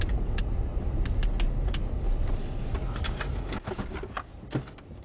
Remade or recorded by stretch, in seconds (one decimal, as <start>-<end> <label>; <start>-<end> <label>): 0.0-5.0 recorded